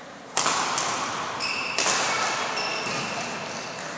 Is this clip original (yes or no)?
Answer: yes